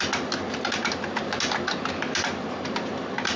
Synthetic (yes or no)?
no